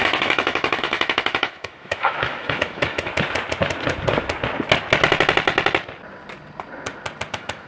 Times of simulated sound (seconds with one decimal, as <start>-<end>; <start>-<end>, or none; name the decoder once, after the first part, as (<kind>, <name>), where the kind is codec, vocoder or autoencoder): 0.0-3.1 (autoencoder, DAC-VAE); 7.3-7.7